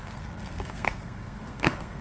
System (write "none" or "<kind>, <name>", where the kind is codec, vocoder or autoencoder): codec, SNAC